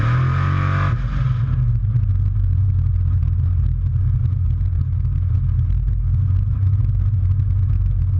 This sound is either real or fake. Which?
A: real